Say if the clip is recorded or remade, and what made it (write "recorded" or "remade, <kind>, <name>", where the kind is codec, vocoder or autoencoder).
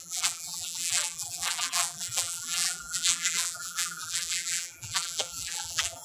remade, vocoder, BigVGAN v2